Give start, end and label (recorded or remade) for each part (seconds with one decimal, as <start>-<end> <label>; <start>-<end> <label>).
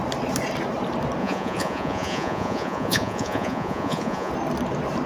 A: 0.0-1.2 recorded; 1.2-4.3 remade; 4.3-5.1 recorded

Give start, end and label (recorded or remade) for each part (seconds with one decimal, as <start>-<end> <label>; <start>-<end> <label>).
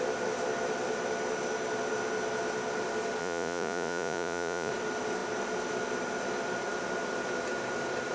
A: 0.0-3.2 recorded; 3.2-4.7 remade; 4.7-8.1 recorded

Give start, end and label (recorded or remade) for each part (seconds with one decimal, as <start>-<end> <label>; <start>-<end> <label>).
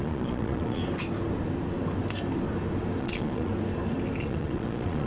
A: 0.0-0.8 remade; 0.8-3.0 recorded; 3.0-3.5 remade; 3.5-4.2 recorded; 4.2-5.1 remade